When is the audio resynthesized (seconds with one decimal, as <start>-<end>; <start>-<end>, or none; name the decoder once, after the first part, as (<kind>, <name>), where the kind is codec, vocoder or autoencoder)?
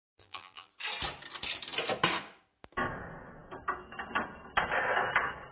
0.0-0.7 (vocoder, BigVGAN v2)